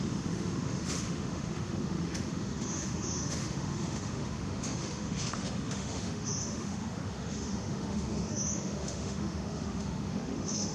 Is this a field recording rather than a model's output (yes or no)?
no